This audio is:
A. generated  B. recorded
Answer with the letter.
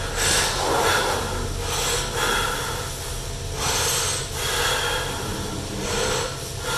B